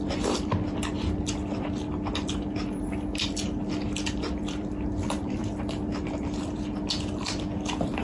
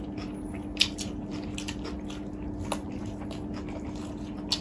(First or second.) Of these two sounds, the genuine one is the second